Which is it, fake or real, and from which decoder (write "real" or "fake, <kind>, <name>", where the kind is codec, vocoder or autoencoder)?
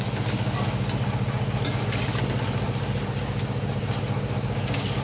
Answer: real